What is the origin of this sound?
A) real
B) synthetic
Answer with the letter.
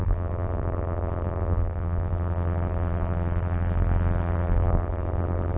B